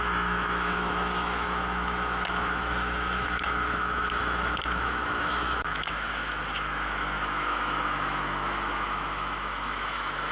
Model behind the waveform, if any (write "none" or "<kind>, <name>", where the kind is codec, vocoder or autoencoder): autoencoder, DAC-VAE